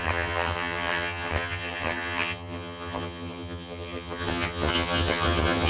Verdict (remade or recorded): remade